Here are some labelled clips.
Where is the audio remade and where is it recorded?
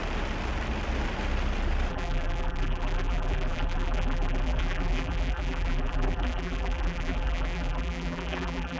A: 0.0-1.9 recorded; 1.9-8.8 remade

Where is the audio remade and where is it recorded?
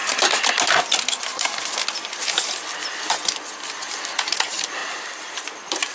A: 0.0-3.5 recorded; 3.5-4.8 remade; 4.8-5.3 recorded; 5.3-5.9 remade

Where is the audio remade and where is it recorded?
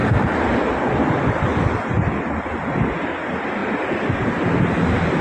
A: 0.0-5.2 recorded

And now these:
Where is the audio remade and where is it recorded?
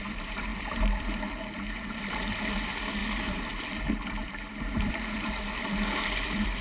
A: 0.0-6.6 remade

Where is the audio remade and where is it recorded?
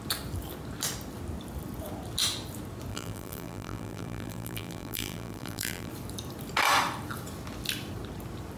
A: 0.0-2.9 recorded; 2.9-5.9 remade; 5.9-8.6 recorded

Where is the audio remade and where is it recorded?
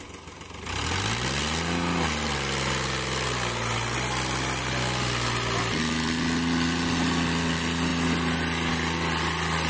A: 0.0-9.7 recorded